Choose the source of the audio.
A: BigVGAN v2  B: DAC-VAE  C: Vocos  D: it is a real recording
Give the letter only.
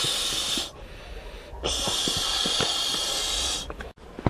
D